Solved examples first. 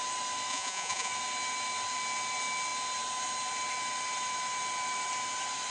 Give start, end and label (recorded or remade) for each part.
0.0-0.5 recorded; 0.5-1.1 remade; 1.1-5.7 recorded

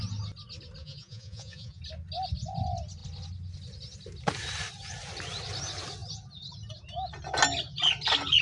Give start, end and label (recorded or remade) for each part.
0.0-0.8 recorded; 0.8-1.8 remade; 1.8-8.4 recorded

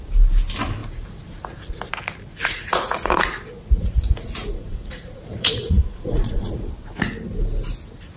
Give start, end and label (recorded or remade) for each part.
0.0-2.3 recorded; 2.3-6.7 remade; 6.7-8.2 recorded